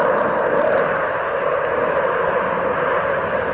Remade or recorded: recorded